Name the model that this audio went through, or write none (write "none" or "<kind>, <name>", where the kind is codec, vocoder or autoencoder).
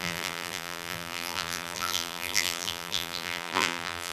vocoder, BigVGAN v2